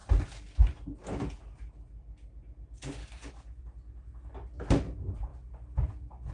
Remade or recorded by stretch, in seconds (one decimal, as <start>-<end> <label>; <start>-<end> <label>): 0.0-3.0 recorded; 3.0-3.6 remade; 3.6-6.3 recorded

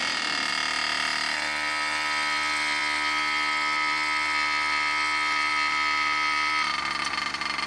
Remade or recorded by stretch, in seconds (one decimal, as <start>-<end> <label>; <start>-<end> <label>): 0.0-7.7 recorded

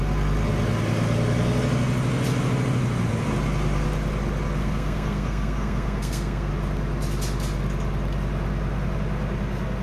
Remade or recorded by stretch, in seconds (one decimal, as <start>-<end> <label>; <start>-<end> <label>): 0.0-4.6 recorded; 4.6-6.5 remade; 6.5-9.8 recorded

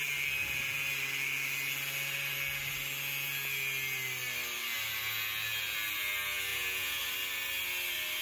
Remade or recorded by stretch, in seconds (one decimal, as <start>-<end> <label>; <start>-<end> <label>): 0.0-6.5 recorded; 6.5-7.0 remade; 7.0-8.2 recorded

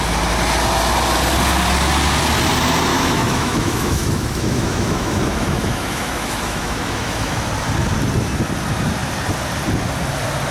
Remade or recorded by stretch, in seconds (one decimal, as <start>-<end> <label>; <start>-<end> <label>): 0.0-2.9 recorded; 2.9-7.5 remade; 7.5-10.5 recorded

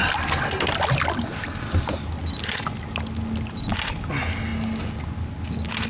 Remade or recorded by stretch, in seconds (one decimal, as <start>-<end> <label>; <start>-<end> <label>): 0.0-5.9 recorded

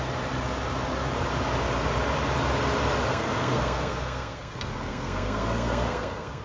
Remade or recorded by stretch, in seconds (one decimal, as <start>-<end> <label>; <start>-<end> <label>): 0.0-3.1 recorded; 3.1-6.4 remade

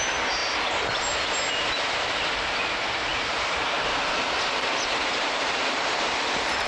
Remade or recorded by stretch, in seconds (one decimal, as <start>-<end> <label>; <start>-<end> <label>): 0.0-3.1 recorded; 3.1-6.2 remade; 6.2-6.7 recorded